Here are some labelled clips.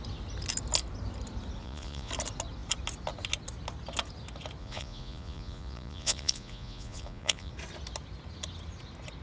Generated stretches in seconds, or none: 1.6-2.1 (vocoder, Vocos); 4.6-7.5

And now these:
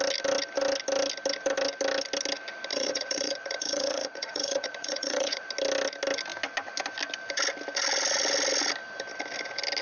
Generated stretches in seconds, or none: 2.7-5.5 (vocoder, Vocos)

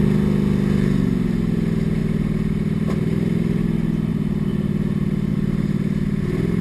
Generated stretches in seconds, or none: none

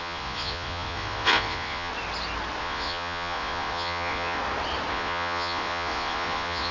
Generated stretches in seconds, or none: 0.0-1.9 (vocoder, Vocos); 2.6-4.4; 4.9-6.7

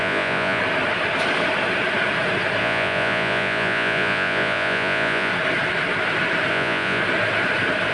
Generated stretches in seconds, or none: 0.0-0.6 (vocoder, Vocos); 2.6-5.3; 6.5-7.0